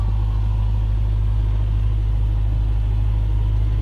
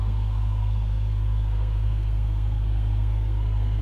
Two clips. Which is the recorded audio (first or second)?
first